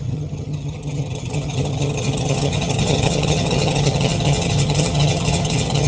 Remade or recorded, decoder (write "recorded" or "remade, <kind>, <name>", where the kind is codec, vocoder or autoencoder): remade, vocoder, HiFi-GAN